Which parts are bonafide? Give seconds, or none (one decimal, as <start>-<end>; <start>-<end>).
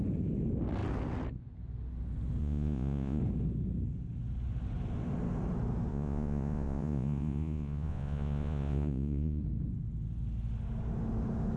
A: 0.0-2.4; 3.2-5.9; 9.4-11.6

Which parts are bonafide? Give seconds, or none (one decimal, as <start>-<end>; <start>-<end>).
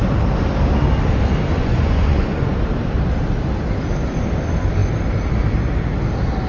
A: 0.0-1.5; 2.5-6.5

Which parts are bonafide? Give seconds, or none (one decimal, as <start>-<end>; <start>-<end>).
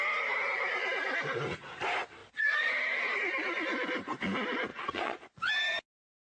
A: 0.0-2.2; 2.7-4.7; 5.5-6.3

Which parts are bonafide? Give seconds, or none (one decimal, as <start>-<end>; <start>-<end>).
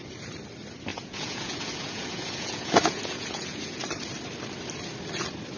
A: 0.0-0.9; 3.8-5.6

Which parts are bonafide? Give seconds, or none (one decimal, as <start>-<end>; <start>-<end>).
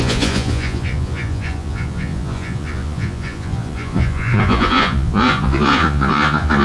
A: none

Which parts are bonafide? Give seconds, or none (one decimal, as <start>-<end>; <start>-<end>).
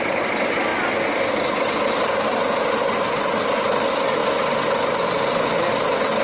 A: 0.0-6.2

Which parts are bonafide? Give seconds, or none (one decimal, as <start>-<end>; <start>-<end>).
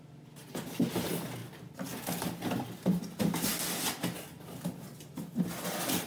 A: 0.0-6.1